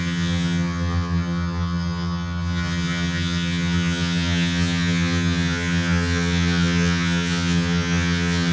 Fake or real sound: fake